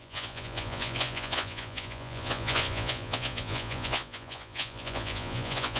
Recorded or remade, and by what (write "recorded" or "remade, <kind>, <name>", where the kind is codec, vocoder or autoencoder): remade, vocoder, Vocos